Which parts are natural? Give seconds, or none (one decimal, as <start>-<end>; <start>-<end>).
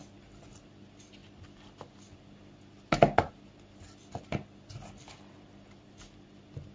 0.0-6.7